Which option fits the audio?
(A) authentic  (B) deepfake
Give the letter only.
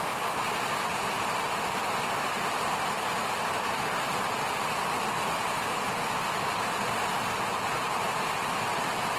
A